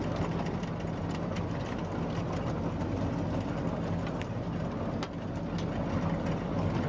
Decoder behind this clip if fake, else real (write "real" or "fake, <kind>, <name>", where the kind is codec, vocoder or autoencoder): real